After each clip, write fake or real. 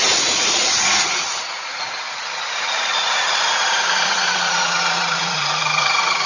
fake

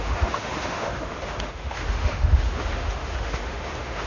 fake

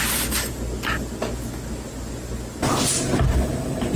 real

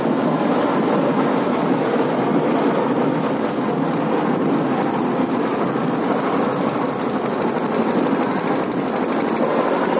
real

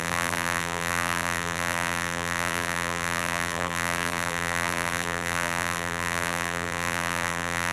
fake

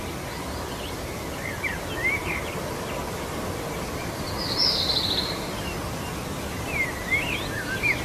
real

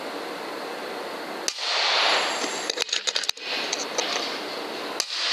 real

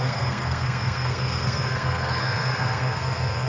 fake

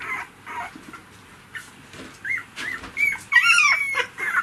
real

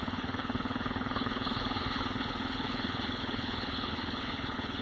fake